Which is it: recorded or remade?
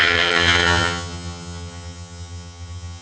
remade